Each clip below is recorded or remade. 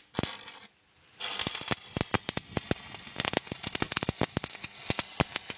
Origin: recorded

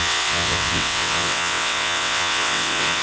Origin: remade